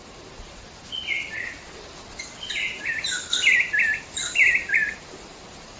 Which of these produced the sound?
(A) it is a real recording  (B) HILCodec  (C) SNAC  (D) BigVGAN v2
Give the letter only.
A